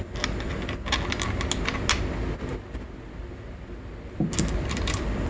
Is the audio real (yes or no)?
yes